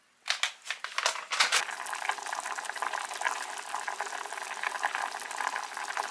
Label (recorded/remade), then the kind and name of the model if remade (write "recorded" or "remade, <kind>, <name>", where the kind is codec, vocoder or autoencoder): recorded